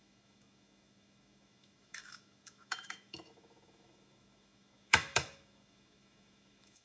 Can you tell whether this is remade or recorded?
remade